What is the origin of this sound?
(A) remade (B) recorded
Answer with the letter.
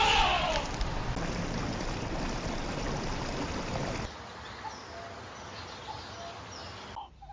B